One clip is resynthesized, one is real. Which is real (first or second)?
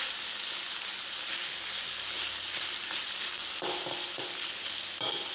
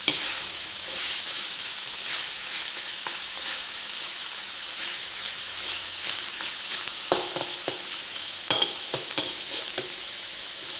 first